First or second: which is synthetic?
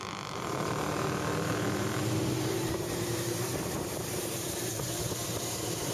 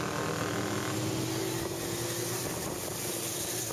first